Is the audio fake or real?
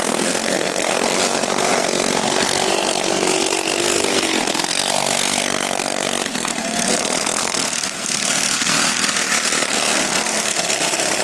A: fake